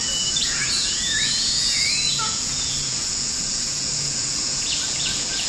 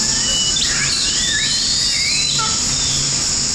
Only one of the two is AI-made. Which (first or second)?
first